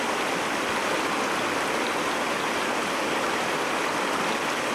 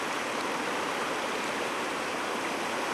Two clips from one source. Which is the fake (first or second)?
second